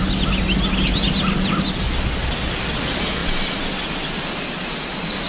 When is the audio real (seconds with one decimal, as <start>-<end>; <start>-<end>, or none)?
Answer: 0.0-5.3

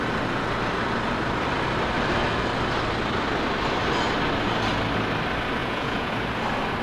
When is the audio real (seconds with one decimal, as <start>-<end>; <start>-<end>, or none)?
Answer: 0.0-5.6; 6.1-6.8